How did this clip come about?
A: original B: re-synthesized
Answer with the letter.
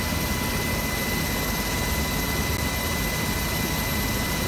A